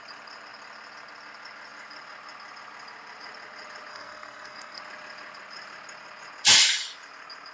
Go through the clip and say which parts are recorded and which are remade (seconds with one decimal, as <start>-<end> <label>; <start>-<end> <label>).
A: 0.0-3.9 recorded; 3.9-4.8 remade; 4.8-7.5 recorded